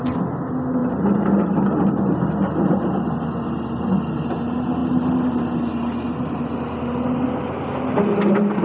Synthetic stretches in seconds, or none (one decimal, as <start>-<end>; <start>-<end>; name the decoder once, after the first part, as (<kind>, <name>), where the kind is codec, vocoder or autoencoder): none